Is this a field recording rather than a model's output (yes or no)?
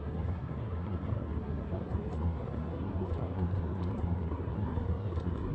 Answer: no